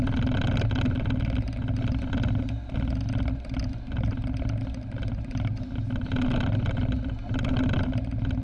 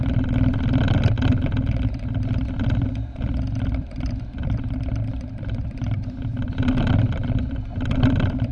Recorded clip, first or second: first